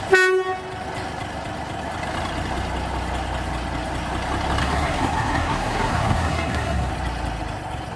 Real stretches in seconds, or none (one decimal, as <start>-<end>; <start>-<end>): 0.0-4.6; 6.9-8.0